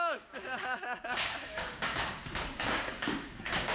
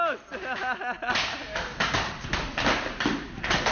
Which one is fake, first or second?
first